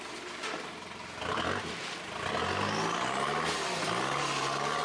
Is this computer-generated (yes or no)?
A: no